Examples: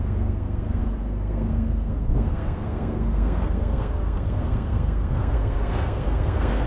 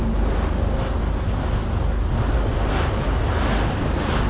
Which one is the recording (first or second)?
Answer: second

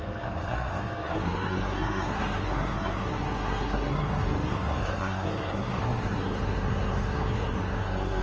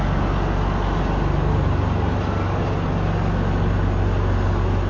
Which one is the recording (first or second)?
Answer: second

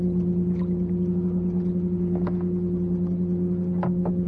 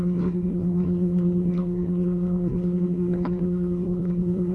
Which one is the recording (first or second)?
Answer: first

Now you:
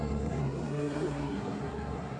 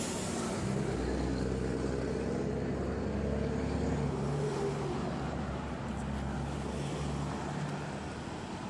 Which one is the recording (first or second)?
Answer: second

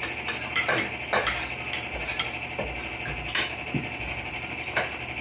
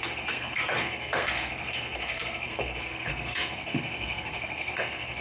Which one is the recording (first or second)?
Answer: first